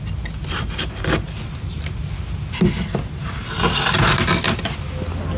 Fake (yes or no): no